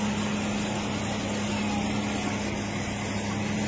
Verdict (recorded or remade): recorded